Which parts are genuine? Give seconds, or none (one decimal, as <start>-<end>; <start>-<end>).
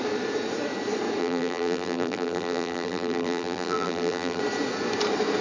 0.0-1.2; 4.4-5.4